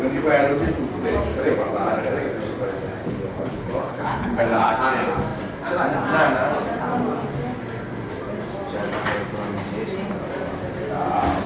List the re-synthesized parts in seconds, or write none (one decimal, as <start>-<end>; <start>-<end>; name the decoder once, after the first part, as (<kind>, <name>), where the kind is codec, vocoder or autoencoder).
1.3-2.1 (codec, HILCodec); 3.0-4.7